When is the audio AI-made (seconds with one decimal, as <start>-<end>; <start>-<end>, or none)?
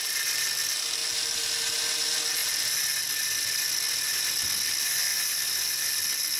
5.1-5.9